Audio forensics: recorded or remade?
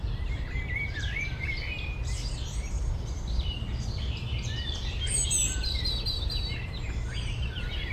remade